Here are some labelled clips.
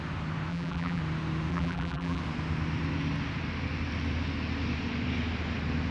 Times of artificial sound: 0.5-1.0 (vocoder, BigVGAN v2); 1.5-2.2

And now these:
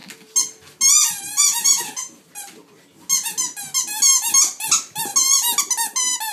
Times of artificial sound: none

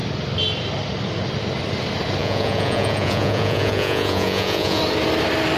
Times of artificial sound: 2.2-4.8 (vocoder, Vocos)

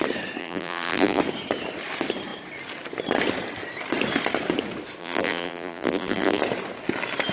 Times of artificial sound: 0.4-1.2 (vocoder, BigVGAN v2); 5.0-6.4

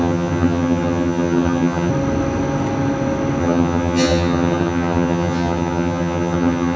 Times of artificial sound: 0.0-1.9 (vocoder, HiFi-GAN); 3.4-6.8